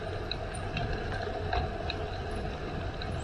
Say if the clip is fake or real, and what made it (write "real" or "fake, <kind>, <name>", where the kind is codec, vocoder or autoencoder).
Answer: real